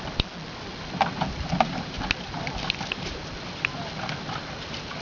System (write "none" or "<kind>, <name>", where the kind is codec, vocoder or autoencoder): none